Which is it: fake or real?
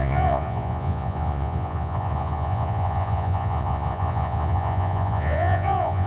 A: fake